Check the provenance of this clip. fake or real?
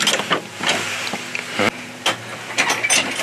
real